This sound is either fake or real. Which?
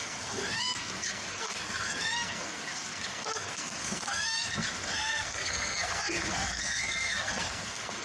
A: fake